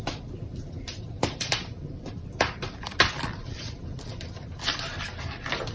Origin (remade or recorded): remade